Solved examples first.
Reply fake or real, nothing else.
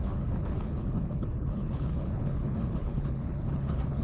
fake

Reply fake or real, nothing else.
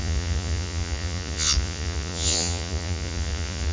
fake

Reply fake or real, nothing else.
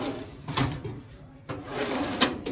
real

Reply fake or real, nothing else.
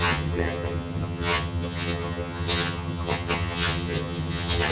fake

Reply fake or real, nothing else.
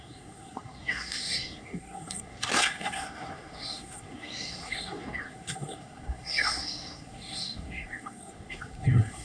fake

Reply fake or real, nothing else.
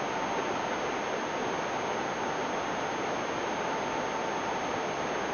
real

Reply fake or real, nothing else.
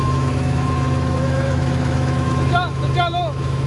fake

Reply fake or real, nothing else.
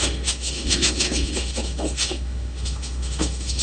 fake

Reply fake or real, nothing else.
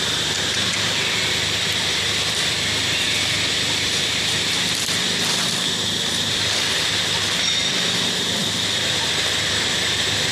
fake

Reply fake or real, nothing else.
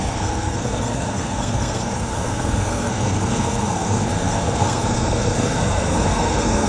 fake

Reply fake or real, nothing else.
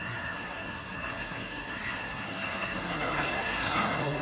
fake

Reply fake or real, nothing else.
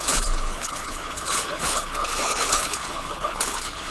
fake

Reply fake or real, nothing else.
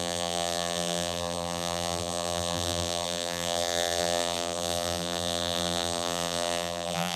fake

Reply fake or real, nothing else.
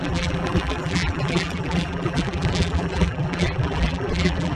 fake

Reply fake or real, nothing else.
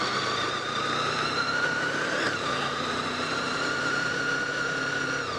fake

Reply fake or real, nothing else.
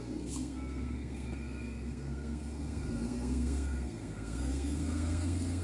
fake